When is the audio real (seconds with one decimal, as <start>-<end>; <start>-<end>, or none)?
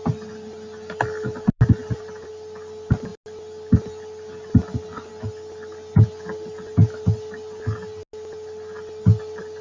0.0-1.8; 2.3-9.6